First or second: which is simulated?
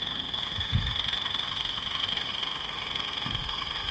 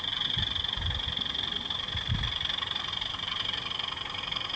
first